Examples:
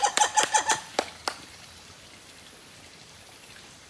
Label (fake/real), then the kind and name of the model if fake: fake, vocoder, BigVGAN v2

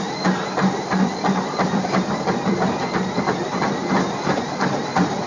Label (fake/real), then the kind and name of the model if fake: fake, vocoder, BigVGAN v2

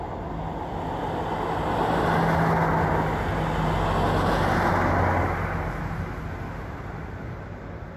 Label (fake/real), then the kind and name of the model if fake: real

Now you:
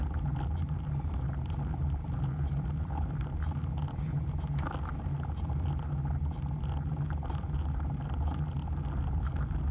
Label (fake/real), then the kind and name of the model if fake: real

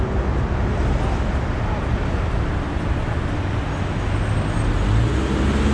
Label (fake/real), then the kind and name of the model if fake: real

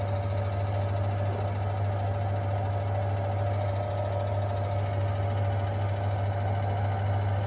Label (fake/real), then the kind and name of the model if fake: real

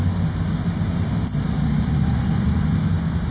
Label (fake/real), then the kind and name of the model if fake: real